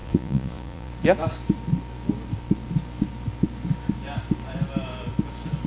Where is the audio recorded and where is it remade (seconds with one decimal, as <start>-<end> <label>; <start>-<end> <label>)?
0.0-0.9 remade; 0.9-5.7 recorded